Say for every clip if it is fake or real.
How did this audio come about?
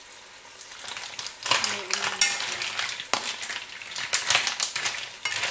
real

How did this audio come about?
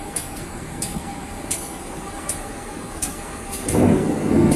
fake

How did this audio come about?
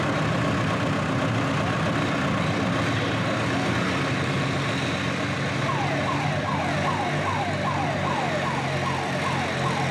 real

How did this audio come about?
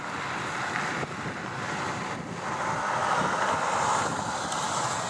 real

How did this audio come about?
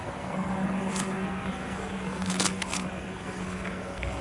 fake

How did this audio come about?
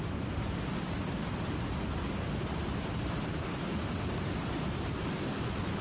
real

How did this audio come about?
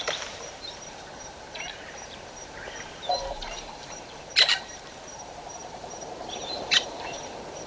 fake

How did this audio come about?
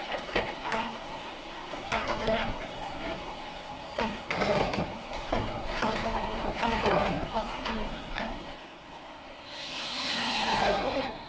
fake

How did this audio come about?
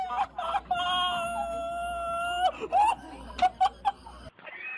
real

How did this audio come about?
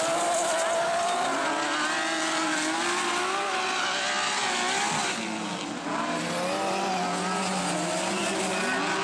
real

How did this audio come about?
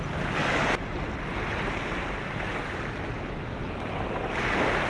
real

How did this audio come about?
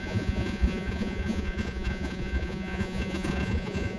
fake